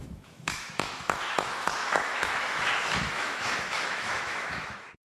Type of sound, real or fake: fake